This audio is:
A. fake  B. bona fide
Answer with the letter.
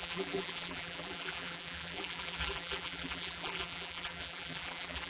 A